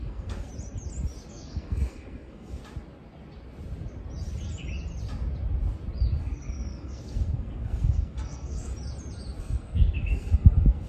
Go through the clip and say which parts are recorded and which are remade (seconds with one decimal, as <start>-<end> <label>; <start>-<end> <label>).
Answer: 0.0-0.5 remade; 0.5-1.3 recorded; 1.3-2.6 remade; 2.6-6.2 recorded; 6.2-8.7 remade; 8.7-9.4 recorded; 9.4-10.9 remade